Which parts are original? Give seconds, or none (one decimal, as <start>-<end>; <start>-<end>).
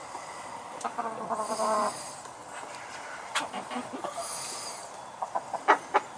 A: 0.0-6.2